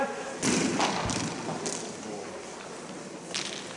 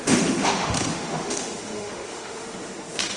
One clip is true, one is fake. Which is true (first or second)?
first